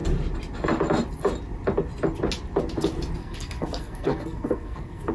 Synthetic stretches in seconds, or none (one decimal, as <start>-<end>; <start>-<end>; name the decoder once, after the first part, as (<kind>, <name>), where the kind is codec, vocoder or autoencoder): 3.2-5.1 (codec, SNAC)